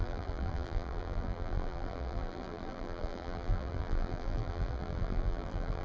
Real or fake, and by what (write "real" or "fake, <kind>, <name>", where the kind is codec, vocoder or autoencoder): fake, vocoder, BigVGAN v2